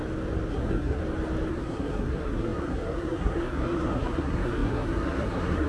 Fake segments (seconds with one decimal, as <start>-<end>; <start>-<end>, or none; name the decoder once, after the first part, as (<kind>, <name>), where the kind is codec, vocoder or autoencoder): 0.5-1.0 (codec, SNAC); 1.5-5.7